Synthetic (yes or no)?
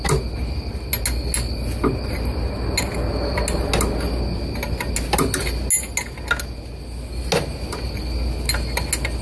no